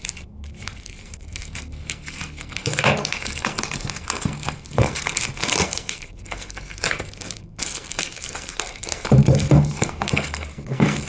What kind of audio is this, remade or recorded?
remade